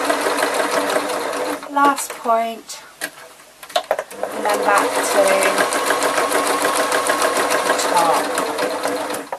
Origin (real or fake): real